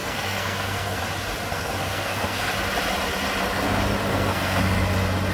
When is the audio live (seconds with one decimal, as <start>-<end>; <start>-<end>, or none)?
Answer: 1.0-1.5; 2.5-4.1; 4.6-5.3